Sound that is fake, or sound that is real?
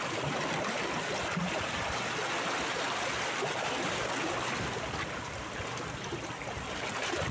real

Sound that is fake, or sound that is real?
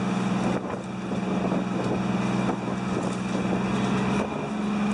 real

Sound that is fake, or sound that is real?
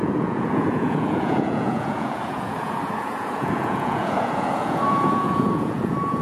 fake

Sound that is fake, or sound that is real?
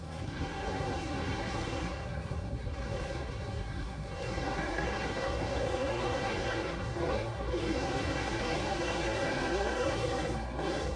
fake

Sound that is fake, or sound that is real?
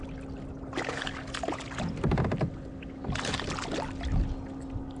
real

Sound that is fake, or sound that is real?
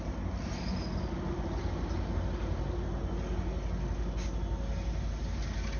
real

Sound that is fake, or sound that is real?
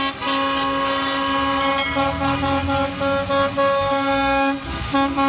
real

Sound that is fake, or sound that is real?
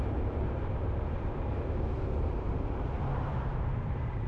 fake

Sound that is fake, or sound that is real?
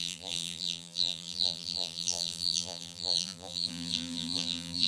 fake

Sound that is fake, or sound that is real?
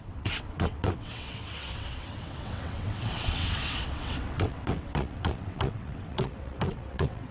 fake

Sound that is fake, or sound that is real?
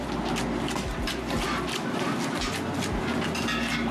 real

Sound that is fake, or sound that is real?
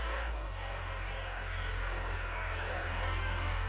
fake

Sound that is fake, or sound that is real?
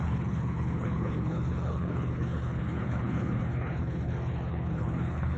fake